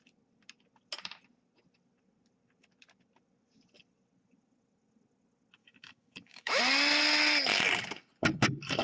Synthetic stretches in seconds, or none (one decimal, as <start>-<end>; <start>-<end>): 5.6-6.6